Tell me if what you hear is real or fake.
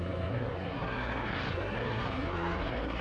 fake